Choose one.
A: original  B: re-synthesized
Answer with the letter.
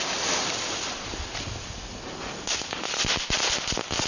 A